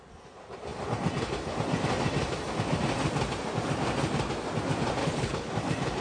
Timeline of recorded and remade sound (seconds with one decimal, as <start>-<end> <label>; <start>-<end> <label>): 0.0-5.0 recorded; 5.0-5.5 remade; 5.5-6.0 recorded